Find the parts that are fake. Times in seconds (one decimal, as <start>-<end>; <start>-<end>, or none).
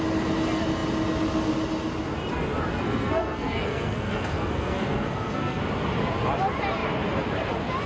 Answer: 2.7-5.6